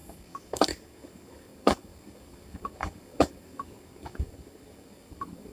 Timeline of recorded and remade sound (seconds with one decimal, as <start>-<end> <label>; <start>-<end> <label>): 0.0-5.5 remade